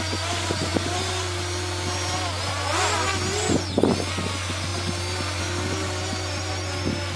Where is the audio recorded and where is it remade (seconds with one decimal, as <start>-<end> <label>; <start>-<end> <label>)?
0.0-7.2 recorded

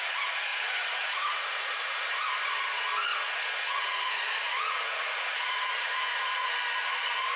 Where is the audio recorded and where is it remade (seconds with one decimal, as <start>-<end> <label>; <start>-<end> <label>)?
0.0-0.5 recorded; 0.5-2.3 remade; 2.3-3.1 recorded; 3.1-6.5 remade; 6.5-7.4 recorded